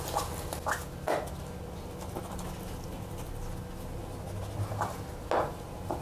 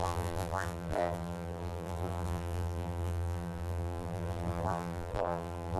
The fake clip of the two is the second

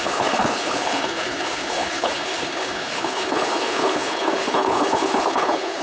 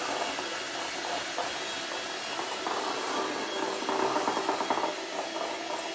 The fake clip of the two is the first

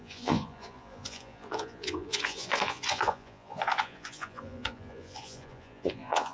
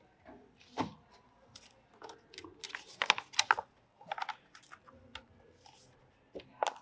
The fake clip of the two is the first